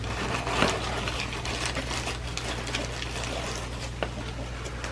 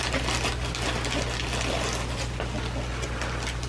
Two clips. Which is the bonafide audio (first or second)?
second